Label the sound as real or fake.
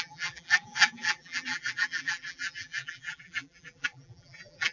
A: fake